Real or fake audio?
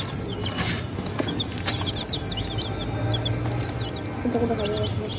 real